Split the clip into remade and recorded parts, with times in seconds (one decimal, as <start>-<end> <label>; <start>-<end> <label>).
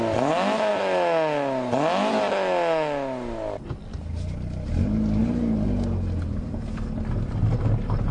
0.0-8.1 recorded